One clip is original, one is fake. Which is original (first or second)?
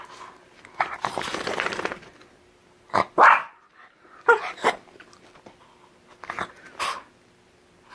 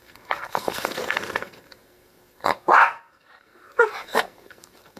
first